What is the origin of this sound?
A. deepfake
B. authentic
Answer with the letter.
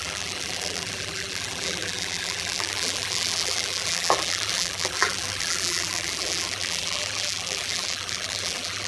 A